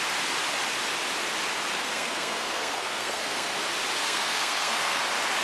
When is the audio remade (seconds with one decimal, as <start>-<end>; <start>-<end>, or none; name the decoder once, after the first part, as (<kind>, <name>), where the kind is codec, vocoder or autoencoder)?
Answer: 1.7-3.6 (codec, SNAC); 4.0-5.0